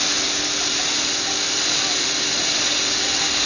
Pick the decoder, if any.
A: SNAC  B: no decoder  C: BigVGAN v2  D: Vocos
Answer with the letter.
B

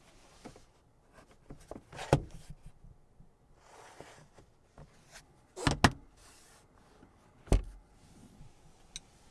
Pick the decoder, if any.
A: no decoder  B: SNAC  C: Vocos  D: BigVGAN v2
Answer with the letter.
A